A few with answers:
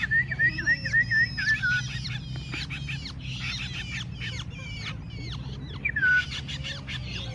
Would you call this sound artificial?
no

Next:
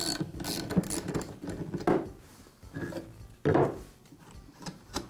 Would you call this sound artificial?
no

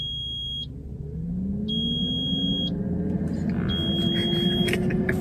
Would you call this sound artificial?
no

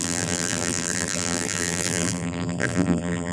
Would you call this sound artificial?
yes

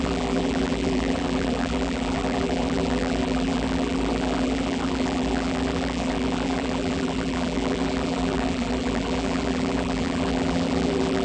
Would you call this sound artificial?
yes